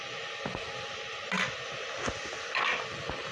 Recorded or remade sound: recorded